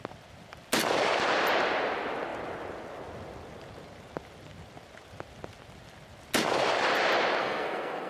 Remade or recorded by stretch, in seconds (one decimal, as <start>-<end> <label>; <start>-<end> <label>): 0.0-7.4 recorded; 7.4-8.1 remade